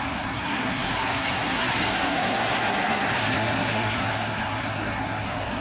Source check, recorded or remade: remade